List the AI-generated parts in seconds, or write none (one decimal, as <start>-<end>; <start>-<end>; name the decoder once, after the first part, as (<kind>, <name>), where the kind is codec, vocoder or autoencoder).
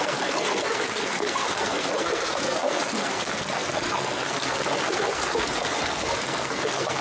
0.0-7.0 (codec, SNAC)